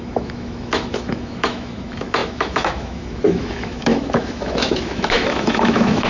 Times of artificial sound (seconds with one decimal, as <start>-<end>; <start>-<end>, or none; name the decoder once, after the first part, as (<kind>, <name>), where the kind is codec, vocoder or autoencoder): 0.0-6.1 (autoencoder, DAC-VAE)